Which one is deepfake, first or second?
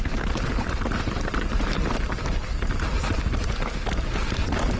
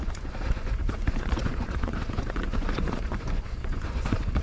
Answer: second